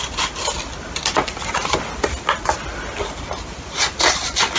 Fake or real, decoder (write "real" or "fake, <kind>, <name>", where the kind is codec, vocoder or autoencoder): real